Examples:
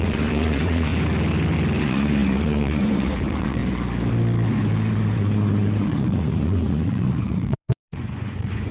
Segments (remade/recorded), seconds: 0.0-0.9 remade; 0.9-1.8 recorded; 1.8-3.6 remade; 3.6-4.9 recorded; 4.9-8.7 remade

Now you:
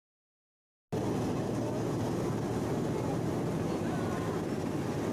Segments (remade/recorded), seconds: 0.0-5.1 recorded

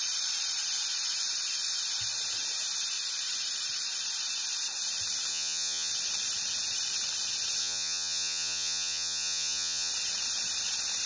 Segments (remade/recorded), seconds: 0.0-5.3 recorded; 5.3-5.9 remade; 5.9-7.6 recorded; 7.6-9.9 remade; 9.9-11.1 recorded

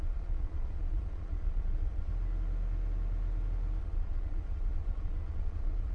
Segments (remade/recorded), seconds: 0.0-2.1 remade; 2.1-3.8 recorded; 3.8-5.9 remade

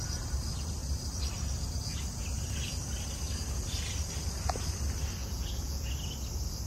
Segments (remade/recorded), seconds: 0.0-5.2 recorded; 5.2-5.9 remade; 5.9-6.7 recorded

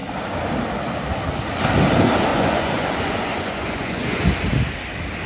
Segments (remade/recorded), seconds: 0.0-2.3 recorded; 2.3-4.2 remade; 4.2-5.3 recorded

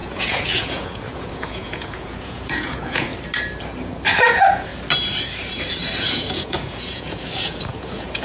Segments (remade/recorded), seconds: 0.0-3.1 remade; 3.1-4.3 recorded; 4.3-4.7 remade; 4.7-6.0 recorded; 6.0-8.2 remade